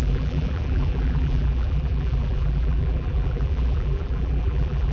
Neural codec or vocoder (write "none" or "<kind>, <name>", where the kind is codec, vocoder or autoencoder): vocoder, BigVGAN v2